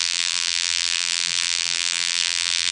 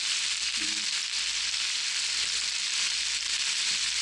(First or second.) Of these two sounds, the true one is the second